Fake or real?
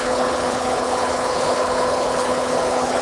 fake